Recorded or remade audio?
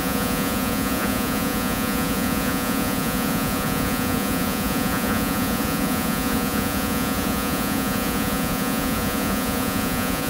remade